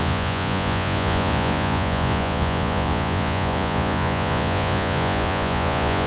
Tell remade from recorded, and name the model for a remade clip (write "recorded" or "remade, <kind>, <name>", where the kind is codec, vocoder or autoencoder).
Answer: remade, vocoder, Vocos